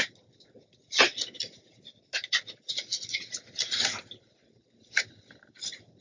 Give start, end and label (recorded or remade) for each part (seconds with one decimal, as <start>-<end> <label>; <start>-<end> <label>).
0.0-6.0 recorded